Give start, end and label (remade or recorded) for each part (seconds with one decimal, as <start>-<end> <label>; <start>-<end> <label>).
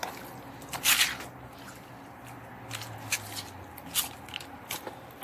0.0-5.2 recorded